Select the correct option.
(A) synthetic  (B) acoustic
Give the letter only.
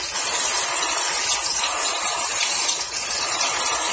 B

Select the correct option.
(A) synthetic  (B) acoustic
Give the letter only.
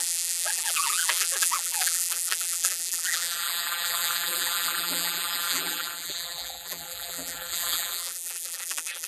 A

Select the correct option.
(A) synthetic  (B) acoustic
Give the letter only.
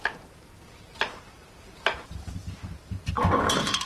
A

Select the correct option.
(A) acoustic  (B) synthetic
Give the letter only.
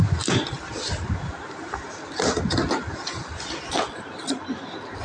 A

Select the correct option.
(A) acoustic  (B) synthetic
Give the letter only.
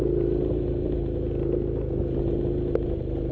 A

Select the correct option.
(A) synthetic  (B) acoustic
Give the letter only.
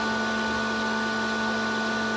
B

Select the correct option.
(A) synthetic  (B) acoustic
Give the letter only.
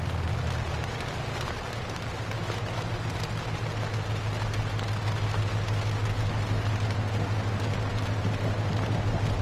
B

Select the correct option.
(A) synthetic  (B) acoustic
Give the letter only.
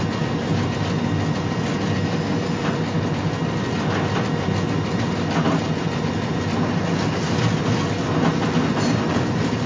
B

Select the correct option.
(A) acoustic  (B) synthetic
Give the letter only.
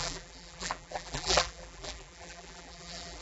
B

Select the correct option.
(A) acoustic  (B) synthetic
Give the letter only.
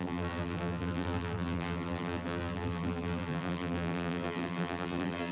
B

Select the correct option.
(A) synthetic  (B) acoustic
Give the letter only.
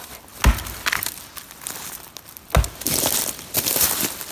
B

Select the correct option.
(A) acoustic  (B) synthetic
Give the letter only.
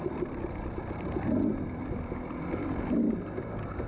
A